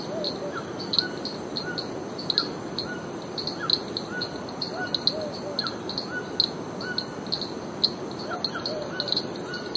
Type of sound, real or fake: real